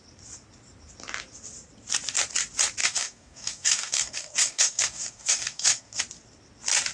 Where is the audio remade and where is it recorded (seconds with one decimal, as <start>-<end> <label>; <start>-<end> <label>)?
0.0-2.8 recorded; 2.8-6.0 remade; 6.0-6.9 recorded